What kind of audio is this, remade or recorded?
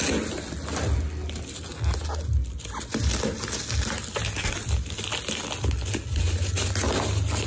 recorded